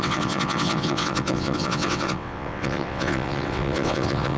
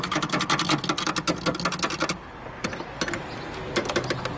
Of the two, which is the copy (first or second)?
first